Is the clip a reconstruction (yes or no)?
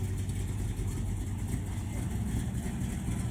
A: no